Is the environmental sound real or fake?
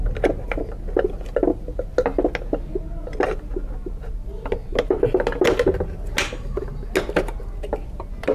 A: real